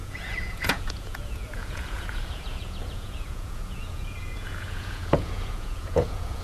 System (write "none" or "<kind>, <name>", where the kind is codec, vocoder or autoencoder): vocoder, Vocos